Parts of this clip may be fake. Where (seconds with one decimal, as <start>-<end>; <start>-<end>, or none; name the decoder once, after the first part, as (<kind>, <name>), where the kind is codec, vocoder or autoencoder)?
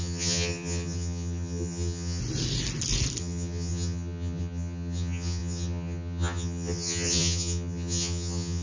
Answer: 0.0-2.2 (vocoder, HiFi-GAN); 3.2-8.6